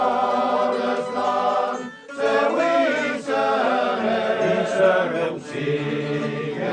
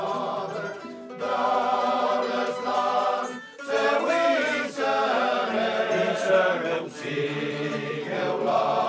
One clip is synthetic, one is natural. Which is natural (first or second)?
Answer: first